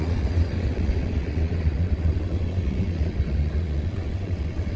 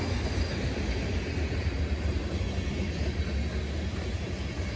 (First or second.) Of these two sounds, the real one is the second